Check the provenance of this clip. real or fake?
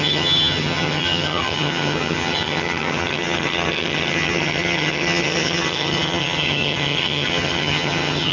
fake